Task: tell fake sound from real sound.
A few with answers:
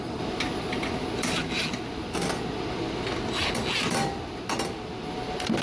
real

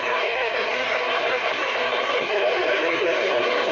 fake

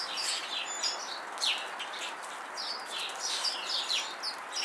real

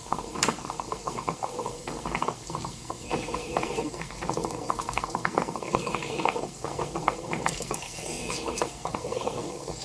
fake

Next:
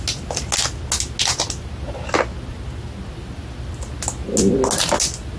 real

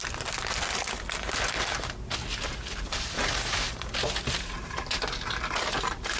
real